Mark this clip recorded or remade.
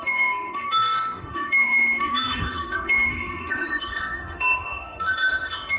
remade